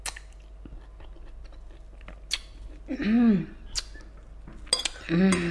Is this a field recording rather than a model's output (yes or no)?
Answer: yes